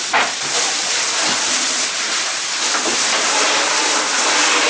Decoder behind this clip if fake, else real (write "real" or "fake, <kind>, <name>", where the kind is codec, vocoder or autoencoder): real